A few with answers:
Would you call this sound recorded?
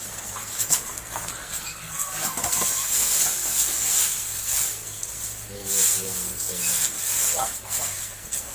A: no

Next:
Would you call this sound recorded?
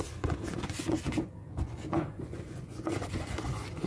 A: no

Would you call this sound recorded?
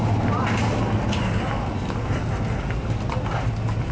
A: yes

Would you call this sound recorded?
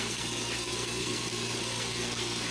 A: no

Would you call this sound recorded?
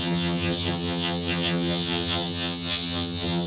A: no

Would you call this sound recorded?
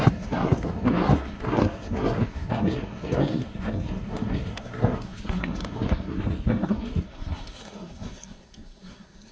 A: no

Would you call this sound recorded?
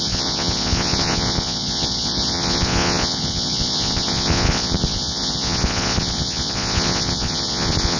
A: no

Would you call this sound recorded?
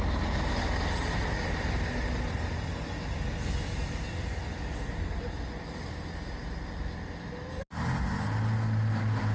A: yes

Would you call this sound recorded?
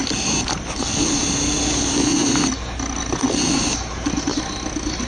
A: yes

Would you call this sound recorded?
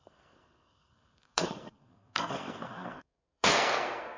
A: no